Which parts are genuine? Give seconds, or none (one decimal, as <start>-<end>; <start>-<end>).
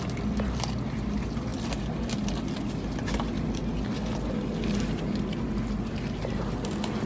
0.0-7.1